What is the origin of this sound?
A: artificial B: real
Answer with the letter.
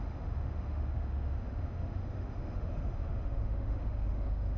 A